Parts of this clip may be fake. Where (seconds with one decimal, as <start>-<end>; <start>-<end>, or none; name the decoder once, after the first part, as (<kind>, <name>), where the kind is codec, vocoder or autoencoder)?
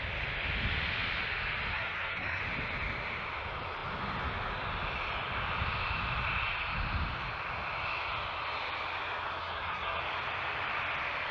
1.7-2.4 (codec, SNAC); 9.4-10.0